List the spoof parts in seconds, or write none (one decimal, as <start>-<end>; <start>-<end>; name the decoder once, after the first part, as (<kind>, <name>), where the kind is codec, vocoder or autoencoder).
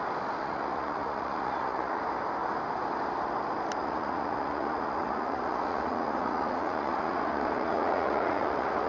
0.4-2.0 (vocoder, Vocos); 3.8-8.9